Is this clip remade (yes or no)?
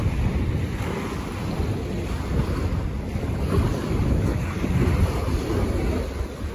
no